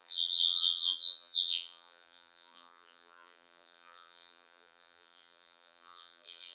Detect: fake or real fake